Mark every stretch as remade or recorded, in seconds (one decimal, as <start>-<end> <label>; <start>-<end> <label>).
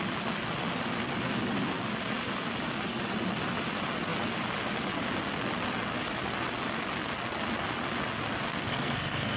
0.0-8.5 recorded; 8.5-9.4 remade